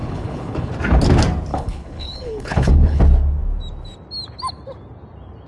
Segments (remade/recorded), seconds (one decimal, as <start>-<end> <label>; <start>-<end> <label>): 0.0-0.7 remade; 0.7-1.5 recorded; 1.5-3.0 remade; 3.0-5.5 recorded